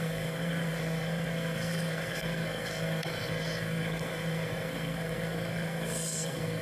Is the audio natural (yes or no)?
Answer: no